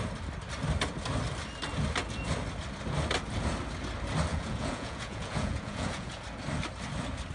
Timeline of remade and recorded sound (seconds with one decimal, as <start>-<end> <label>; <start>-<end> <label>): 0.0-4.3 recorded; 4.3-6.2 remade; 6.2-7.3 recorded